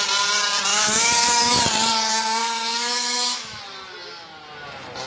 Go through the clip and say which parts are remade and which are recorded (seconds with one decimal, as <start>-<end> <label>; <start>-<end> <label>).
0.0-0.7 recorded; 0.7-1.6 remade; 1.6-2.4 recorded; 2.4-3.6 remade; 3.6-5.1 recorded